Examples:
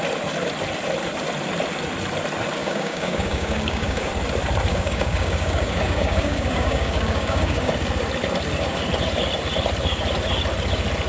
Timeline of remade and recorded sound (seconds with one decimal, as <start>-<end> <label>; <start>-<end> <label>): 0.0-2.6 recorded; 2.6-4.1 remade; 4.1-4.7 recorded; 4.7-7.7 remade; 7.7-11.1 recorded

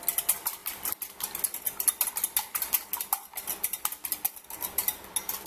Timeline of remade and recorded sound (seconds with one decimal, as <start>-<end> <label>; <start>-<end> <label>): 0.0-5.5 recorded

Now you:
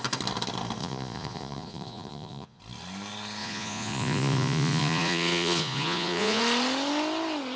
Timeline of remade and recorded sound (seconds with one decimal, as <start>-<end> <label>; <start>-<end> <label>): 0.0-0.8 recorded; 0.8-2.6 remade; 2.6-3.4 recorded; 3.4-6.4 remade; 6.4-7.6 recorded

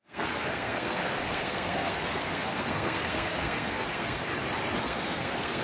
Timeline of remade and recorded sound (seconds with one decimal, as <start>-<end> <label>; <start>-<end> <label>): 0.0-4.3 remade; 4.3-4.8 recorded; 4.8-5.6 remade

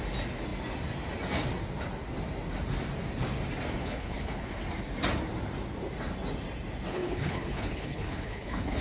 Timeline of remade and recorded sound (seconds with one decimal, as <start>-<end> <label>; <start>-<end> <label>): 0.0-3.8 recorded; 3.8-4.5 remade; 4.5-6.9 recorded; 6.9-8.8 remade